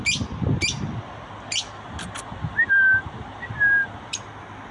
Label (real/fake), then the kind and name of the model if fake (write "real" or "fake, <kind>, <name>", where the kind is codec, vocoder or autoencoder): real